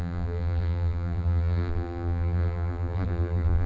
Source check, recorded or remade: remade